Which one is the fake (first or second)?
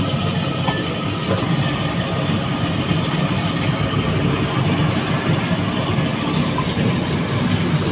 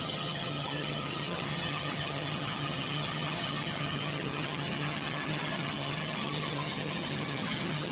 second